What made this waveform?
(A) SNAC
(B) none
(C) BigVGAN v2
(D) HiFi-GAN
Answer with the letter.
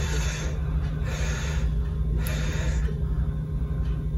B